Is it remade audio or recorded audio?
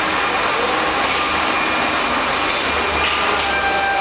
recorded